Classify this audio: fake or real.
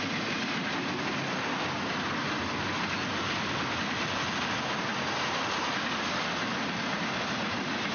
real